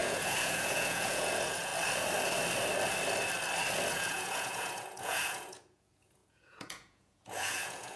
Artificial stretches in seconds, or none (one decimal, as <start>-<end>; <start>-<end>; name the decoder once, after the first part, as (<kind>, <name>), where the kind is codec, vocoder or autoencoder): 0.0-1.7 (vocoder, Vocos); 3.9-8.0